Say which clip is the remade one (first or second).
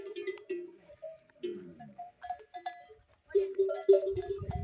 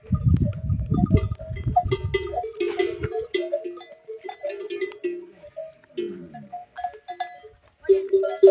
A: first